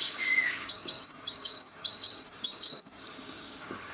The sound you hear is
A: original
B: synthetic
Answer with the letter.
B